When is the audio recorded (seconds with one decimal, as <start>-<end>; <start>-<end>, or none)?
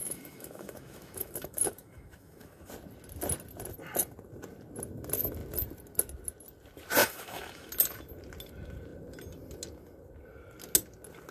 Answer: 2.7-7.0; 7.7-11.3